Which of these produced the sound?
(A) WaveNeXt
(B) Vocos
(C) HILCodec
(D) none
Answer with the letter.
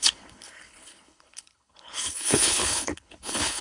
C